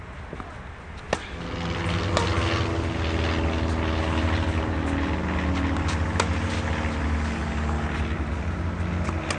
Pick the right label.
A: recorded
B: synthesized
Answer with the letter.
A